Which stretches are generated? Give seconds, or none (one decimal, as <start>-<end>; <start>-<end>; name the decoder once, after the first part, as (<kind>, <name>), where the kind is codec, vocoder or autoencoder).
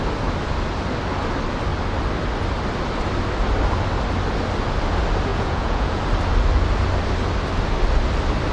5.3-6.0 (vocoder, Vocos)